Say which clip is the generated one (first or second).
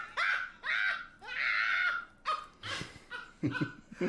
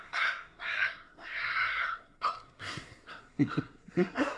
second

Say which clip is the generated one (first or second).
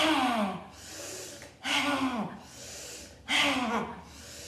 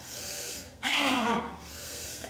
second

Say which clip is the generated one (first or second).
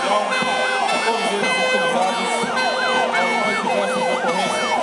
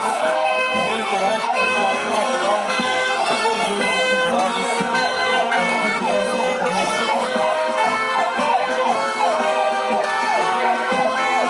second